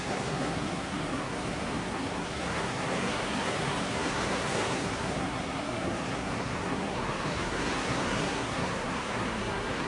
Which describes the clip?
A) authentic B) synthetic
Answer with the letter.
B